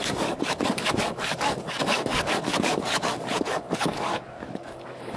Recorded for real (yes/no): no